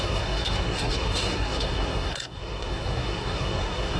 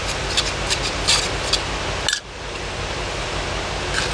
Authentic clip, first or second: second